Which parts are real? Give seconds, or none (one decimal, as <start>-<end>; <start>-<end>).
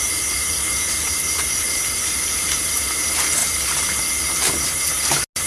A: 0.0-5.5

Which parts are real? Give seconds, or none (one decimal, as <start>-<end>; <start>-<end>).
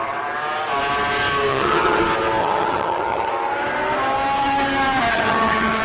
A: 0.0-1.5; 2.0-2.4; 3.3-5.1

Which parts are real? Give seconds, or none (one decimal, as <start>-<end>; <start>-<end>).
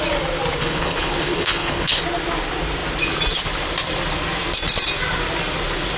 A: 0.0-0.6; 2.0-6.0